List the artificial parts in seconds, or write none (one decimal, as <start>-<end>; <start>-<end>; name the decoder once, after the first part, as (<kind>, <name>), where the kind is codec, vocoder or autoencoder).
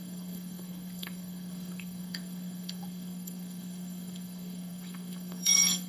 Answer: 0.0-5.9 (codec, SNAC)